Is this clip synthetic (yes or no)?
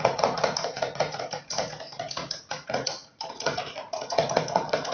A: yes